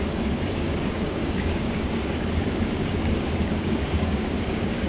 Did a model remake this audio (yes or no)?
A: yes